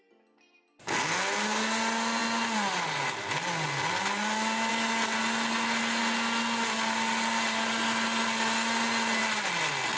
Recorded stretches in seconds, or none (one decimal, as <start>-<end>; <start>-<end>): 0.0-10.0